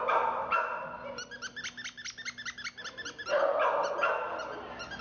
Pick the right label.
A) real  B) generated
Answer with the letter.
A